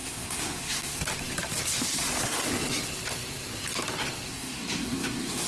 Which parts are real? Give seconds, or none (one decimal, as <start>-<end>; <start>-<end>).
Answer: 1.0-4.3